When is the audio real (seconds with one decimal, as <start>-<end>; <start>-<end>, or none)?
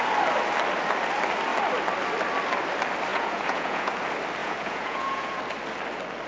0.0-3.1; 3.9-4.4; 5.4-6.3